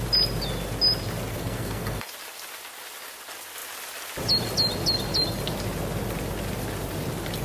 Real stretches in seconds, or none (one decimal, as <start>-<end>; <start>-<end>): 0.0-1.3; 2.1-7.4